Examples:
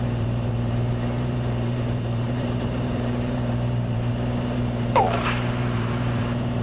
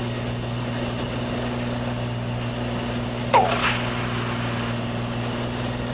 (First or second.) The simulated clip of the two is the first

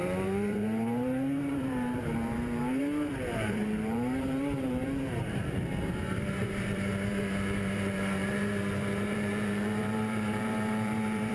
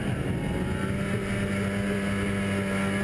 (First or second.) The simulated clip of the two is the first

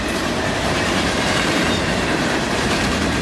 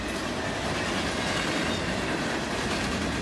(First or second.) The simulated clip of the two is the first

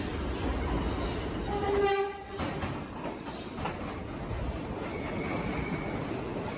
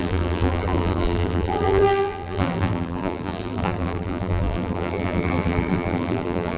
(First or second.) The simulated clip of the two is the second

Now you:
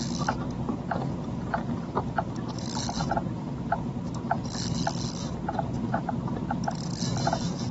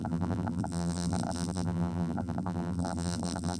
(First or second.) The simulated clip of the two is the second